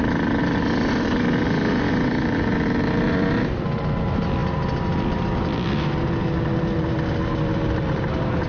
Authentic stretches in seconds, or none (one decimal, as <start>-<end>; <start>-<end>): 0.0-8.5